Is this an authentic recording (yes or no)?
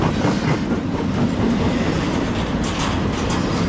yes